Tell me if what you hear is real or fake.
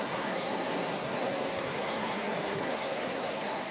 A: fake